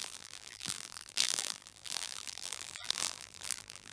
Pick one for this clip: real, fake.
fake